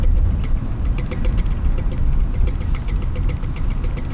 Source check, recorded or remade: recorded